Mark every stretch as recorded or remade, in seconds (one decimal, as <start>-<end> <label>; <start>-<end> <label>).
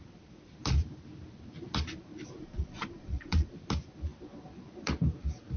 0.0-2.4 recorded; 2.4-3.5 remade; 3.5-5.6 recorded